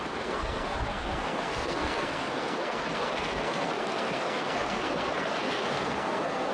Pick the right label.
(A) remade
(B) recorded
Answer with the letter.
A